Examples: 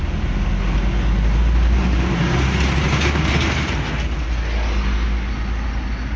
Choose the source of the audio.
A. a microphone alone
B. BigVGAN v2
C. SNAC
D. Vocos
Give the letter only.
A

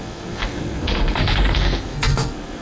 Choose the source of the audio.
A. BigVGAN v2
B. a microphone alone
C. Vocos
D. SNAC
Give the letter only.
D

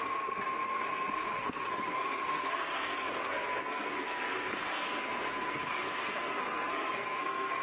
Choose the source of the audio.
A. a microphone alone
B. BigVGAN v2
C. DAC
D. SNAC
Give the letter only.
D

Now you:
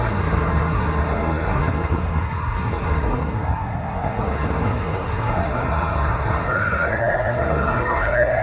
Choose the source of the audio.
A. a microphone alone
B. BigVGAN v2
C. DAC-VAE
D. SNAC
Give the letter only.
D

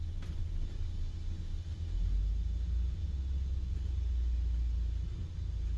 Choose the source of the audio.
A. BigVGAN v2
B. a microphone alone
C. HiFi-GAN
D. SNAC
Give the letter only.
B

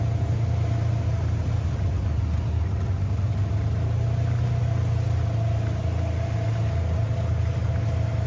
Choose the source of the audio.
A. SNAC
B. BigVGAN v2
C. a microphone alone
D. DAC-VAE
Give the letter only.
C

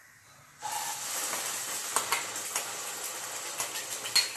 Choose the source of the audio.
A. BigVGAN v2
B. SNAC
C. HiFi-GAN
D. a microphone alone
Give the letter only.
D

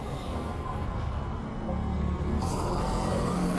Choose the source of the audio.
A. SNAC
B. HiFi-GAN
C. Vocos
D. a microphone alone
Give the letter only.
A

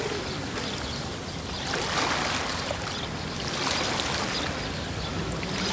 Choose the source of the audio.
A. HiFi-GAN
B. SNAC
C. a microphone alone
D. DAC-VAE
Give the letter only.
C